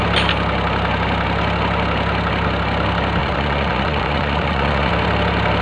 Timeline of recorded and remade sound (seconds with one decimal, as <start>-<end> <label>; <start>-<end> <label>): 0.0-3.2 recorded; 3.2-4.9 remade; 4.9-5.6 recorded